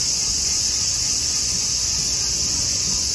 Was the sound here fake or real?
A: fake